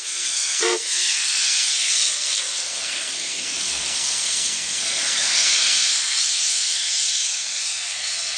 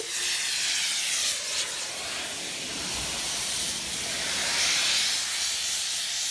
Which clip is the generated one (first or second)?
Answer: first